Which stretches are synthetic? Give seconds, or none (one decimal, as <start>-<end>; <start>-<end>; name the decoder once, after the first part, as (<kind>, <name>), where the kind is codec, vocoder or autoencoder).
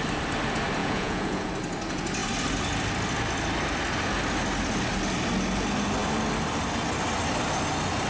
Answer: 0.8-1.5 (vocoder, Vocos)